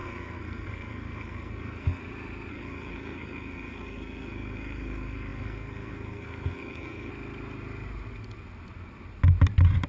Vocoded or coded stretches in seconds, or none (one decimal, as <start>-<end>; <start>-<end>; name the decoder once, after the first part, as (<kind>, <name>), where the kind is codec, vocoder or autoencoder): 0.0-2.0 (codec, SNAC); 2.5-7.1